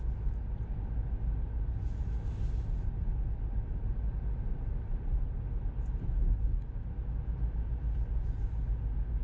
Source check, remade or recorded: recorded